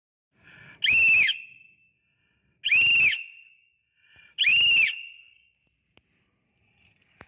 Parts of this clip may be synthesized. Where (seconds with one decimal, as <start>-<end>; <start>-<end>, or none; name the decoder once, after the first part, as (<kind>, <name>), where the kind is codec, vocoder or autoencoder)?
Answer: none